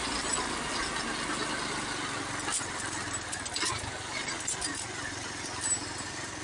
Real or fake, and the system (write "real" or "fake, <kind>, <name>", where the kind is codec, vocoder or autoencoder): real